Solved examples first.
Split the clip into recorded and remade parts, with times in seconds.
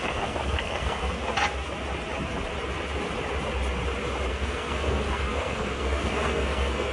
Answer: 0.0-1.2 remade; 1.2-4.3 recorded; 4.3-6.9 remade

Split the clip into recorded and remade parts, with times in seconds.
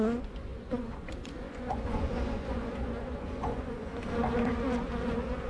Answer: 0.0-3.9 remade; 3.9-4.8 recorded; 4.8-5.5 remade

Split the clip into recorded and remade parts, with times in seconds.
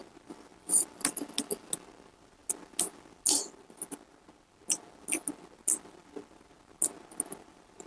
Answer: 0.0-7.9 recorded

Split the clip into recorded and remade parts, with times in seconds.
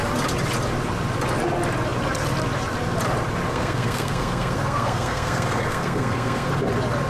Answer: 0.0-3.5 recorded; 3.5-6.5 remade; 6.5-7.1 recorded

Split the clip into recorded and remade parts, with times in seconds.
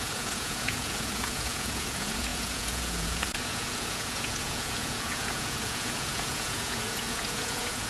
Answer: 0.0-7.9 remade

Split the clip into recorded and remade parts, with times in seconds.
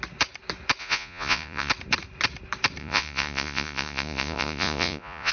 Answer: 0.0-0.8 recorded; 0.8-1.7 remade; 1.7-2.8 recorded; 2.8-5.3 remade